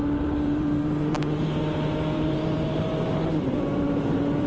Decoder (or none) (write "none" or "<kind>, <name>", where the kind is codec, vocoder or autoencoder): vocoder, BigVGAN v2